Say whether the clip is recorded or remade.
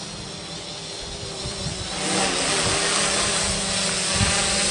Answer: recorded